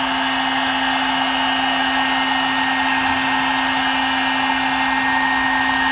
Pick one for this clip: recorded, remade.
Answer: recorded